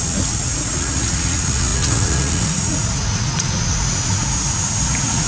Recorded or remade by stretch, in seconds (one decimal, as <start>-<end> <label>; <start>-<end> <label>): 0.0-5.3 remade